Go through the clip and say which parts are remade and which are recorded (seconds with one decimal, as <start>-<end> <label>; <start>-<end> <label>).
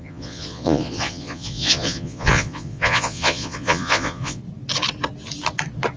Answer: 0.0-4.4 remade; 4.4-6.0 recorded